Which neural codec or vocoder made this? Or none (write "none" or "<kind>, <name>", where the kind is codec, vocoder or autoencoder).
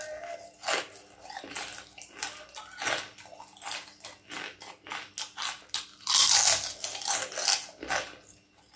none